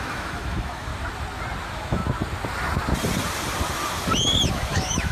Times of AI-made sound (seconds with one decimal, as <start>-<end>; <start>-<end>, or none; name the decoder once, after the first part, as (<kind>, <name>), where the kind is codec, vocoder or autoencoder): 0.0-0.9 (autoencoder, DAC-VAE); 1.6-2.0; 4.5-5.1